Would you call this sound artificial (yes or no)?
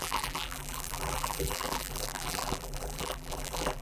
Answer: yes